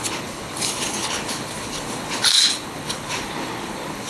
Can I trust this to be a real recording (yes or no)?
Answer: no